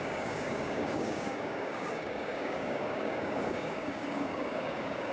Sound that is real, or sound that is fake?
fake